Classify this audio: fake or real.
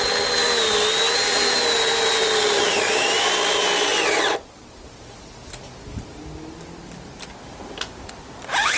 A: real